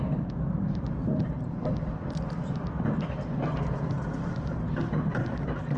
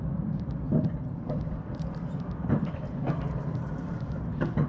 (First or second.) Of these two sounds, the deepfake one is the second